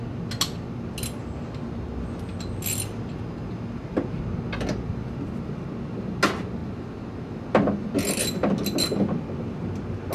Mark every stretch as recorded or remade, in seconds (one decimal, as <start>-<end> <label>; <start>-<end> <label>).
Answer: 0.0-10.1 recorded